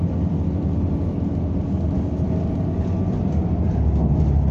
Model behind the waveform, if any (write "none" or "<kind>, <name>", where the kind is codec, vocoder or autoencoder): none